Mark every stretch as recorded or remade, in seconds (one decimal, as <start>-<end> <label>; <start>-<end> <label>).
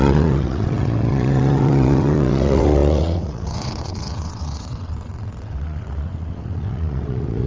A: 0.0-7.5 remade